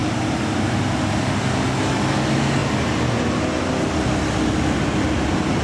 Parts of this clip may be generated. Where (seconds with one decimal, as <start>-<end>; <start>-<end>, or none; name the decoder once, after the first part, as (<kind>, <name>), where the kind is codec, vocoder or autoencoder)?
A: 0.0-0.8 (vocoder, BigVGAN v2)